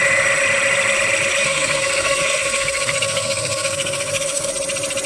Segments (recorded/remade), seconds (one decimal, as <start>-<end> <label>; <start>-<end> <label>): 0.0-1.4 recorded; 1.4-4.5 remade; 4.5-5.1 recorded